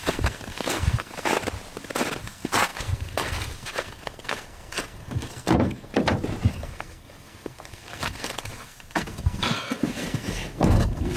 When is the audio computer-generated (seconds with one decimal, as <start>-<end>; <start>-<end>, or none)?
0.0-1.3; 2.2-5.9; 6.5-11.2